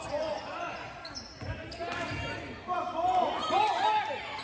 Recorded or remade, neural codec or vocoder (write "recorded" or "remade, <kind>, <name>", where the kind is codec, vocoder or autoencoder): recorded